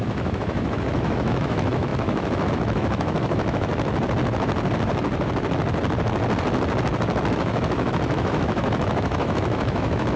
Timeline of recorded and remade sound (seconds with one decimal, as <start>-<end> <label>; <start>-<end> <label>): 0.0-3.7 remade; 3.7-7.3 recorded; 7.3-10.2 remade